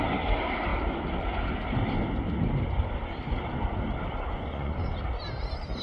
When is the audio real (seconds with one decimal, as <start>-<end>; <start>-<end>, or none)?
0.0-4.1; 4.8-5.8